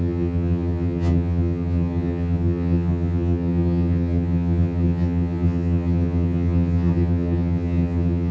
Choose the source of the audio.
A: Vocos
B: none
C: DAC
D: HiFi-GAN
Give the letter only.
D